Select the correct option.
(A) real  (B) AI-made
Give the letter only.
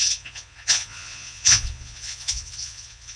B